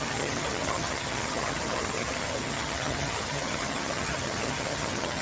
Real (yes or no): no